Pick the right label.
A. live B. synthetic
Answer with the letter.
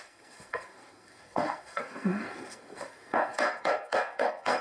B